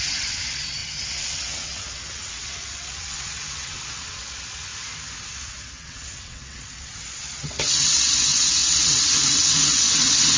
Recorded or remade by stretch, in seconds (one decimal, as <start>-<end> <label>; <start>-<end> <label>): 0.0-4.7 remade; 4.7-5.2 recorded; 5.2-10.4 remade